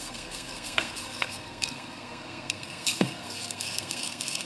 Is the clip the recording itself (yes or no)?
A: no